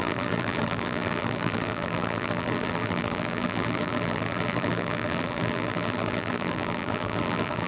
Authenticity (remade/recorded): remade